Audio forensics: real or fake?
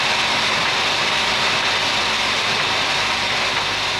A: fake